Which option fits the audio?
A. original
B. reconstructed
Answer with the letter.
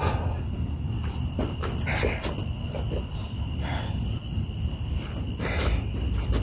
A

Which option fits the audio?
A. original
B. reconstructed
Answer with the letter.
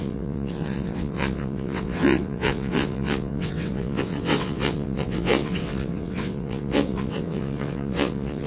B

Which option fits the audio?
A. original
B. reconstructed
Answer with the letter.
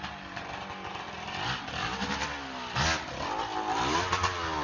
A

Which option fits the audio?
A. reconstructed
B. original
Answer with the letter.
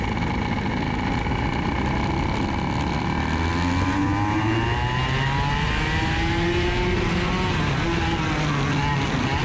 B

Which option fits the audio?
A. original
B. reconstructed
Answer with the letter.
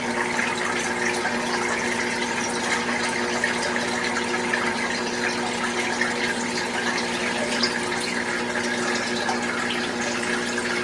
A